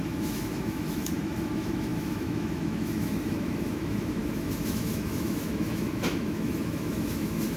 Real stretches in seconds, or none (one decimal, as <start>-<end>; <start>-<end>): none